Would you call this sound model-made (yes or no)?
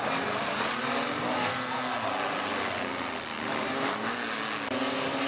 no